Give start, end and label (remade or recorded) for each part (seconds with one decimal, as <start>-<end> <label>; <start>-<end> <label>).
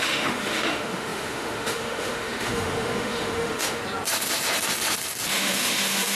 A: 0.0-3.8 remade; 3.8-5.3 recorded; 5.3-6.1 remade